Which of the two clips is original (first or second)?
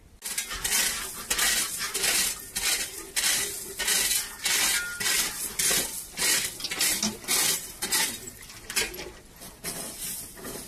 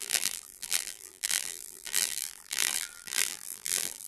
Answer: first